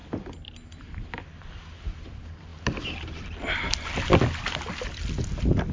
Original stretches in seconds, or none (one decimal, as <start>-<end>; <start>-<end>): 0.0-5.7